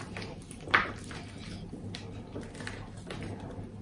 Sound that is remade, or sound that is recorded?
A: recorded